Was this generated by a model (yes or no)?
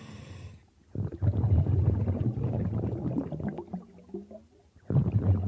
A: no